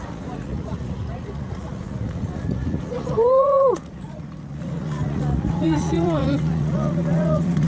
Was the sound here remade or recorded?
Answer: remade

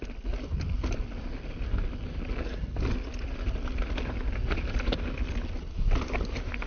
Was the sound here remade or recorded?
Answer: recorded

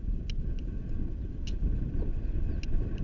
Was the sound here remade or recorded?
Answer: recorded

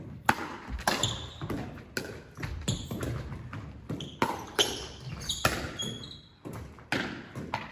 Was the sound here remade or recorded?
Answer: recorded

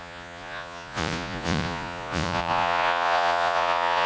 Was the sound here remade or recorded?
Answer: remade